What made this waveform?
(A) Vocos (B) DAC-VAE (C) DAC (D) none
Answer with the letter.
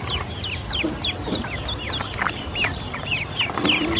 D